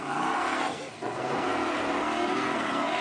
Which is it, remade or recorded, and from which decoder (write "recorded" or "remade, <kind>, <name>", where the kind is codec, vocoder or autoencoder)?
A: remade, codec, SNAC